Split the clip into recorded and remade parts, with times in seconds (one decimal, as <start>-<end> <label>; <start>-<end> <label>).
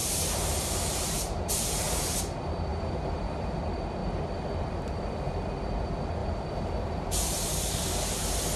0.0-2.0 remade; 2.0-2.7 recorded; 2.7-3.6 remade; 3.6-6.2 recorded; 6.2-7.7 remade; 7.7-8.6 recorded